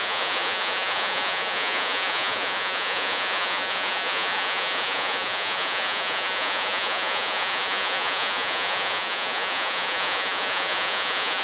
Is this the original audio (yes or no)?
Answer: no